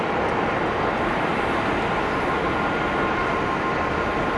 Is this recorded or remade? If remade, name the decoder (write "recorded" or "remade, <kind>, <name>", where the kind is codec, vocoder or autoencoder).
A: recorded